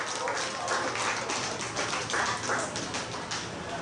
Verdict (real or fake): real